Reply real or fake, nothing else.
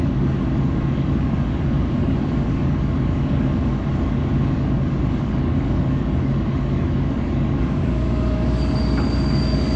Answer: fake